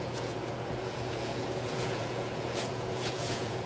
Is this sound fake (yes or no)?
yes